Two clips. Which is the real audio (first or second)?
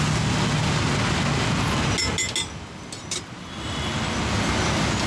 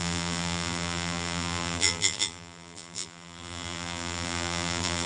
first